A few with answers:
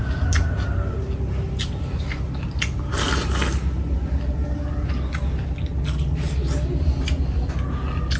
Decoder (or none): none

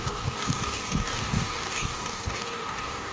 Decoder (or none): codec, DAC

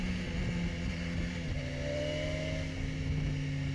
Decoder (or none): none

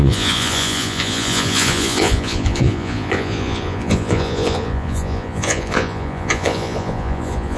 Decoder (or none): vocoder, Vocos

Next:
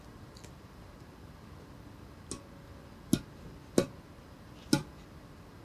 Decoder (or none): none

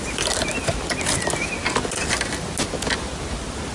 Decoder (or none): none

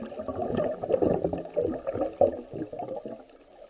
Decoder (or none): none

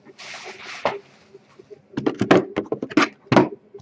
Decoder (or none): none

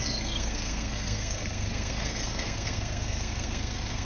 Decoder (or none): codec, SNAC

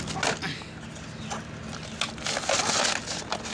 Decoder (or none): none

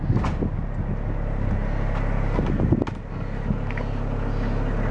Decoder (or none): none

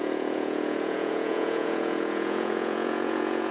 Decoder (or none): vocoder, Vocos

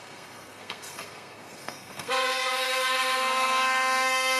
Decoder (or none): codec, SNAC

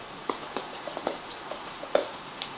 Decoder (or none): vocoder, Vocos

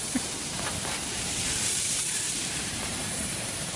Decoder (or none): vocoder, BigVGAN v2